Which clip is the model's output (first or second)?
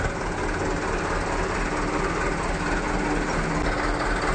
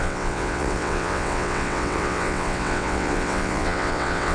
second